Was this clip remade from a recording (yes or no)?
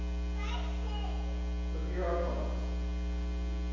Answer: no